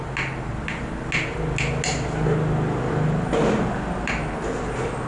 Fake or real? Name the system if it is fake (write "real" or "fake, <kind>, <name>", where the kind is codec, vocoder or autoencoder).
real